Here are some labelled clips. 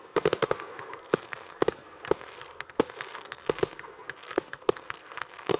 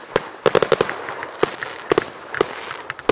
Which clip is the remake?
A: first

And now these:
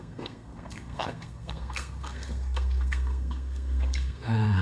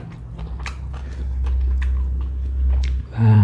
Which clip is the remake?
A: first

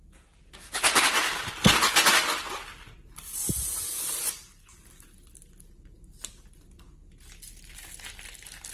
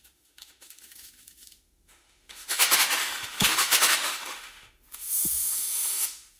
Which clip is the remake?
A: second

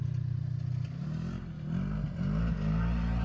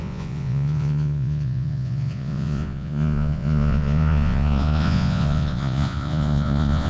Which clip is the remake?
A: second